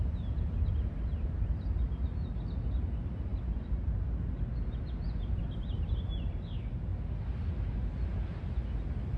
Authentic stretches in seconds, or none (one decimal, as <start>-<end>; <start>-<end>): 0.0-9.2